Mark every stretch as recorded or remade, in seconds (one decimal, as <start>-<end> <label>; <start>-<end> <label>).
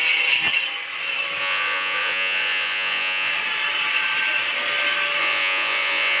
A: 0.0-1.4 recorded; 1.4-3.3 remade; 3.3-5.2 recorded; 5.2-6.2 remade